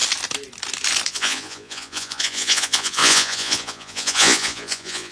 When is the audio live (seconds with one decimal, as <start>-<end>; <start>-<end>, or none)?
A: 0.0-1.1